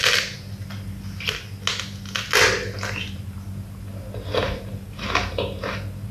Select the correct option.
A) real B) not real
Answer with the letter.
A